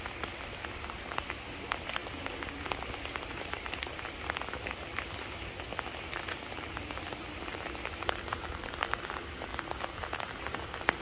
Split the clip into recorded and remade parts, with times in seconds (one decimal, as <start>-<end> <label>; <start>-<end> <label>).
0.0-11.0 recorded